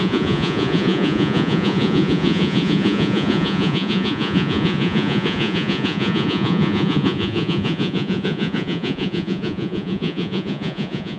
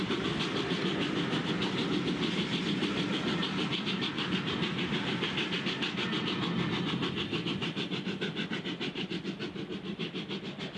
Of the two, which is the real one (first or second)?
second